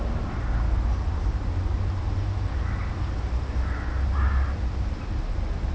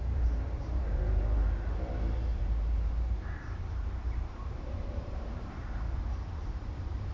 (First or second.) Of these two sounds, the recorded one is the first